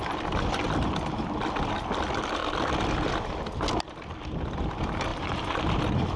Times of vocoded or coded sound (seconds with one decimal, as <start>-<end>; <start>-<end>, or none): none